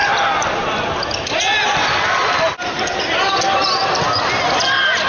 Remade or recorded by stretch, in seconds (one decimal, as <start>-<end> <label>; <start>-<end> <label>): 0.0-5.1 recorded